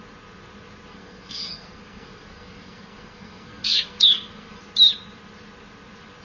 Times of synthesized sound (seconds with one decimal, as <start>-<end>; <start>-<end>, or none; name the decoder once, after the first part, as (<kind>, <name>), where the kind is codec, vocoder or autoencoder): 0.9-4.6 (codec, SNAC)